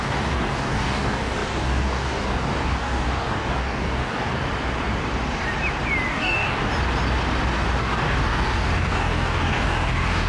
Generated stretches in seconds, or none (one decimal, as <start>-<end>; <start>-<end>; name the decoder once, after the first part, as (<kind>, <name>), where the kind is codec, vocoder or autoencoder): 0.0-4.3 (codec, DAC); 6.1-6.7; 7.8-10.3